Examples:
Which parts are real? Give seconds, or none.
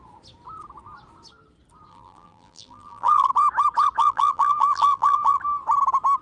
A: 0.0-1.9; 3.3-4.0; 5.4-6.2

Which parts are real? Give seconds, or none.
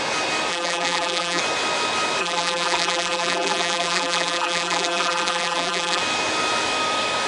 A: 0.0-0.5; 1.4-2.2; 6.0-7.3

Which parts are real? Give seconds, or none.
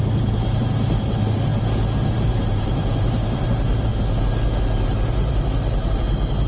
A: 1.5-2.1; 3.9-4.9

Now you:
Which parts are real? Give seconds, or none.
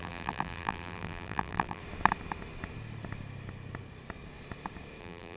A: 1.8-5.0